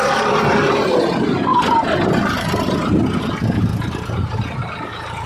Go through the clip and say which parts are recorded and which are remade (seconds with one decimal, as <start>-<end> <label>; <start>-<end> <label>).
0.0-5.3 recorded

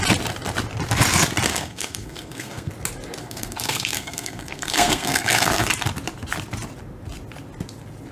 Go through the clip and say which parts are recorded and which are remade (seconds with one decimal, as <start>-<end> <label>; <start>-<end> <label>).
0.0-1.5 recorded; 1.5-2.7 remade; 2.7-3.2 recorded; 3.2-5.7 remade; 5.7-8.1 recorded

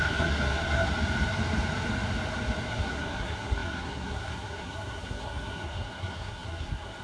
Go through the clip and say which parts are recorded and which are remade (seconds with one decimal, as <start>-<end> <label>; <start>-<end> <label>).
0.0-0.9 remade; 0.9-2.7 recorded; 2.7-7.0 remade

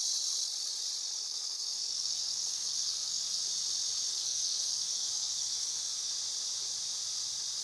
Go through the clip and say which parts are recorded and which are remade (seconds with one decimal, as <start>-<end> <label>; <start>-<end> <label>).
0.0-1.2 recorded; 1.2-3.4 remade; 3.4-4.1 recorded; 4.1-6.1 remade; 6.1-7.6 recorded